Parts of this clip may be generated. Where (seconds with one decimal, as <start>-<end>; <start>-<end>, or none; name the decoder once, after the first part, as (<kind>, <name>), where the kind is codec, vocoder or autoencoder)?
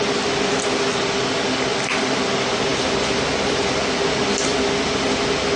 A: none